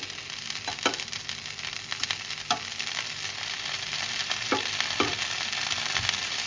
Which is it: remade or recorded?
recorded